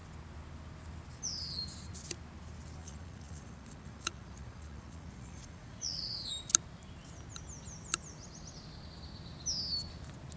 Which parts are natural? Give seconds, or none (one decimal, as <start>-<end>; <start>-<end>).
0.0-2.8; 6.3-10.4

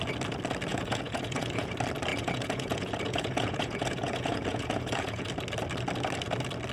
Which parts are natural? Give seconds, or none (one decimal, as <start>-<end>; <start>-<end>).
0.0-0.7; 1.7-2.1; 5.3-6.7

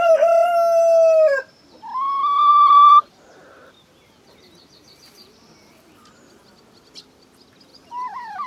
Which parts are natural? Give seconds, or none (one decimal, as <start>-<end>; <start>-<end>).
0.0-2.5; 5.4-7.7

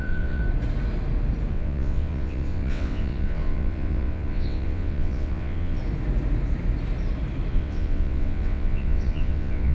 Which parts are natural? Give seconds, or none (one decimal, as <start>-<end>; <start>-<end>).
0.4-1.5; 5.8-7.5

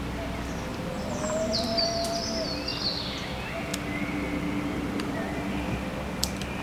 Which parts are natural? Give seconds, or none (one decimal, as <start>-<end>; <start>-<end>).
0.0-0.7; 2.2-6.6